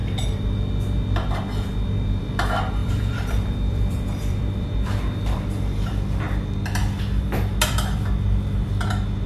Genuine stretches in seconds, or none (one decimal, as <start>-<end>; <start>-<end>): 0.0-2.8; 5.0-9.3